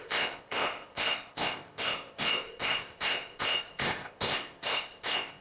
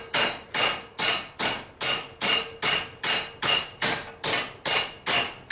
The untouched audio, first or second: second